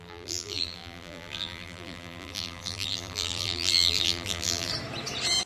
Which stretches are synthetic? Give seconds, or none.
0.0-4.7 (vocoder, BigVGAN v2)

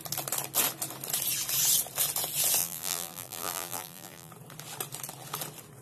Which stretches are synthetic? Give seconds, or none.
2.6-4.3 (vocoder, BigVGAN v2)

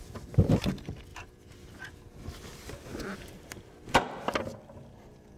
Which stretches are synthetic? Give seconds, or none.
1.1-1.7 (vocoder, BigVGAN v2); 2.9-5.0

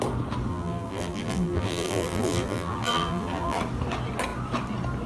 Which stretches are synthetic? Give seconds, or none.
0.5-3.6 (vocoder, BigVGAN v2)

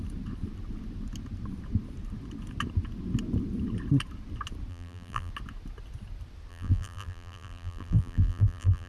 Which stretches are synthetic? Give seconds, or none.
4.7-5.3 (vocoder, BigVGAN v2); 6.5-8.9

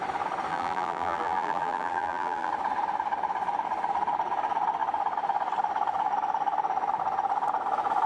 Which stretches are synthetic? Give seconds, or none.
0.5-2.5 (vocoder, BigVGAN v2)

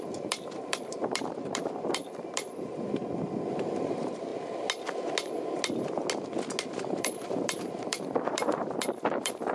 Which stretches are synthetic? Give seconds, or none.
0.0-3.0 (vocoder, BigVGAN v2); 3.5-4.3; 6.7-9.5